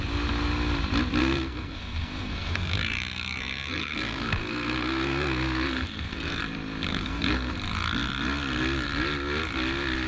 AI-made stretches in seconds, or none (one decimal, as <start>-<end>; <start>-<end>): 1.2-6.4; 6.9-7.5